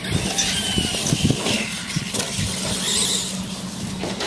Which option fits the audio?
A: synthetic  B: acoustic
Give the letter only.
B